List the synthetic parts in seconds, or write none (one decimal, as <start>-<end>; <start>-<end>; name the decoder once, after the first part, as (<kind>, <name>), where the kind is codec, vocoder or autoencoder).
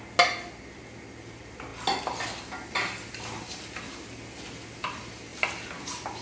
none